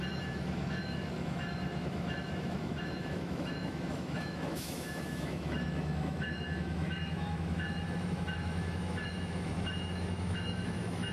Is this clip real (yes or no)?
no